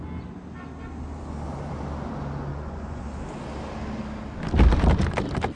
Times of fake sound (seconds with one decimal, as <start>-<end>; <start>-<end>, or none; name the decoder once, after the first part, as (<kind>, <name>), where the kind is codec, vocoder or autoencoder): 2.5-3.0 (vocoder, Vocos)